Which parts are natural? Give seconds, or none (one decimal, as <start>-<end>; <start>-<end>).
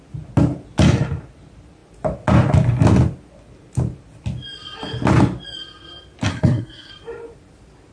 0.0-6.3; 6.9-7.9